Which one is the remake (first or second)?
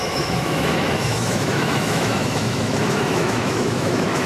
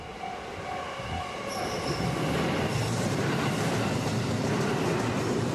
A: first